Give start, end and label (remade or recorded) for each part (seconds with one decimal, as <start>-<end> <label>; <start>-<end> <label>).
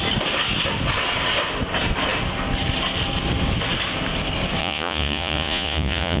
0.0-4.6 recorded; 4.6-6.2 remade